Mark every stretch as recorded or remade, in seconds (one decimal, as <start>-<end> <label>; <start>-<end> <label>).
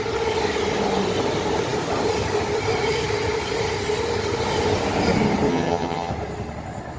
0.0-5.5 recorded; 5.5-6.1 remade; 6.1-7.0 recorded